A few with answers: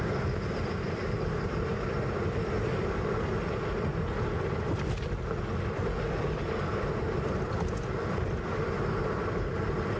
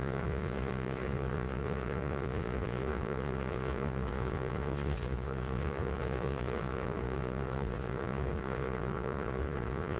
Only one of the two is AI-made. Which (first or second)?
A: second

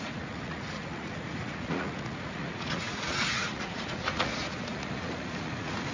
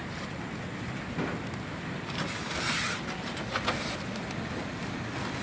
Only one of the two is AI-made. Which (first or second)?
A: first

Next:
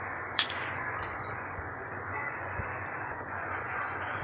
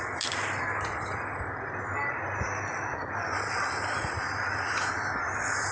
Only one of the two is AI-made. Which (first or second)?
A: first